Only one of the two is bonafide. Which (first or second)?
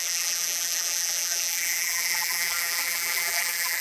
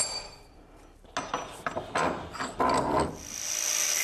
second